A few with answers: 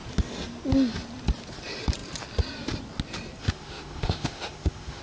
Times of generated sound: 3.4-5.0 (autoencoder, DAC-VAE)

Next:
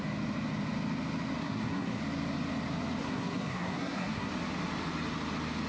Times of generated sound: 1.4-2.0 (codec, SNAC); 3.0-4.3

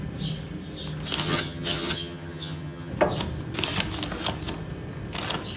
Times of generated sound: 1.2-2.9 (vocoder, HiFi-GAN)

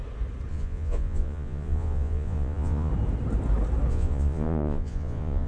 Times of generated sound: 0.5-2.9 (vocoder, Vocos); 3.9-5.5

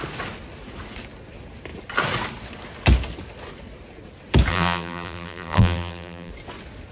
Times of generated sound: 4.5-6.3 (vocoder, BigVGAN v2)

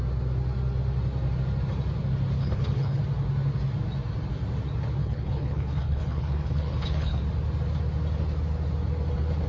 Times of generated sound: 2.4-3.0 (codec, HILCodec); 5.0-7.2